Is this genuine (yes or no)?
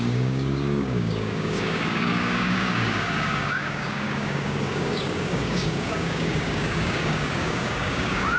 no